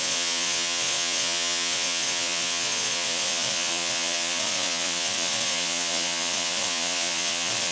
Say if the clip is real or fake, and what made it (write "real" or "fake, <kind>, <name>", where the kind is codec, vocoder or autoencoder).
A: fake, vocoder, Vocos